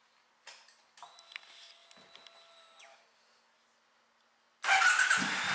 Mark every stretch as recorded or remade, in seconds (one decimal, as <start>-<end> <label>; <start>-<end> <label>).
0.0-5.5 recorded